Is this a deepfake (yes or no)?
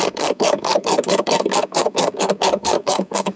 yes